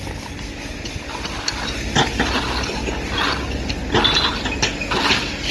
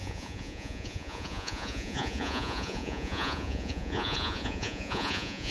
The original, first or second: first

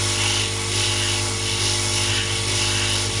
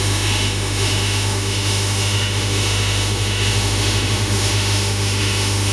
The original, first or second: first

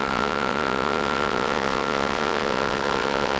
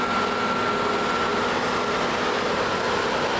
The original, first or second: second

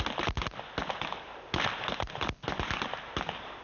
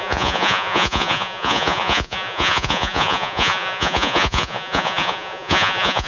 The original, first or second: first